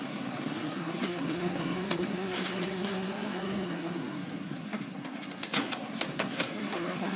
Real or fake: fake